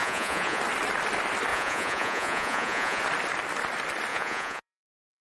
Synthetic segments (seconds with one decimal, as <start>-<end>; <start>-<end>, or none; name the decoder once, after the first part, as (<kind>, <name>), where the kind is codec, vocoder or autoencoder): 0.0-0.6 (vocoder, Vocos); 1.5-3.0; 4.1-5.2